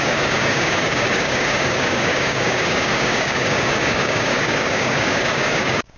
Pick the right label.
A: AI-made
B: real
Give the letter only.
A